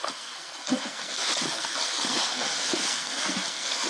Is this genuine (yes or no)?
no